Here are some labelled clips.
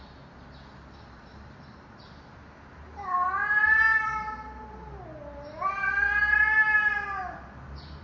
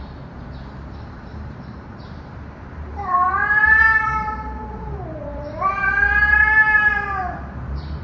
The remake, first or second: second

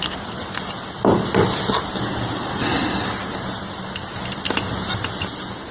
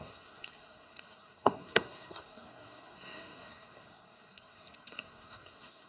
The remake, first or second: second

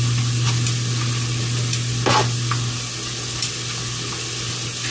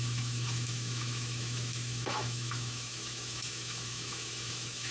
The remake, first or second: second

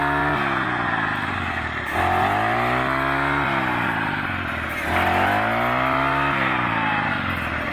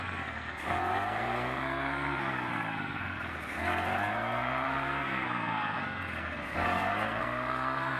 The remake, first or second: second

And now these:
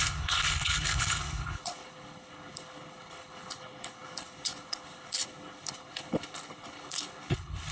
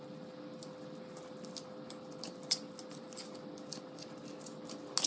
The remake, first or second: first